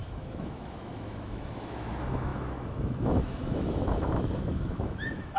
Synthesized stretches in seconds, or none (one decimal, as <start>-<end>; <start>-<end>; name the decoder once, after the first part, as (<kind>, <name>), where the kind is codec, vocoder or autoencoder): 0.0-5.4 (autoencoder, DAC-VAE)